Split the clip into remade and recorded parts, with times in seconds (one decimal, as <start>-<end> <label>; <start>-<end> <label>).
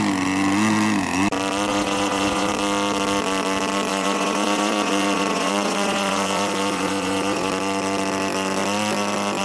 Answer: 0.0-1.7 recorded; 1.7-2.5 remade; 2.5-3.9 recorded; 3.9-7.5 remade; 7.5-9.4 recorded